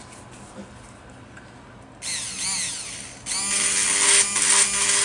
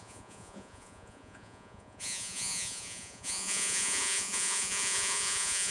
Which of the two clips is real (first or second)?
first